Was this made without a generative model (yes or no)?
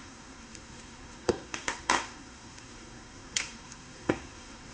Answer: no